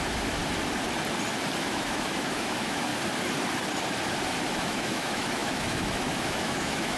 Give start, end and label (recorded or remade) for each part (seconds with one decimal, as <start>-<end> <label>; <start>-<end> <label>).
0.0-0.4 remade; 0.4-1.6 recorded; 1.6-2.9 remade; 2.9-4.5 recorded; 4.5-7.0 remade